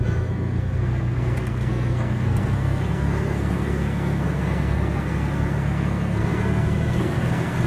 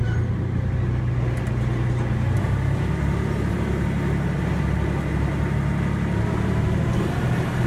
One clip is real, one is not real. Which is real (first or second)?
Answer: second